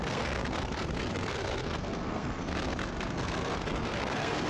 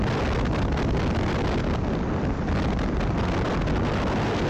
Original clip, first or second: second